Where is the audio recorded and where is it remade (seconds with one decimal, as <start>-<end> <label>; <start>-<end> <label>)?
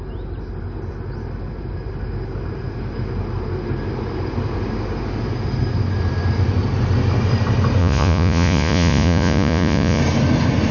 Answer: 0.0-7.8 recorded; 7.8-10.0 remade; 10.0-10.7 recorded